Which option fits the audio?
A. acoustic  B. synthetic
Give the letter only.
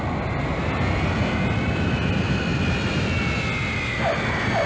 A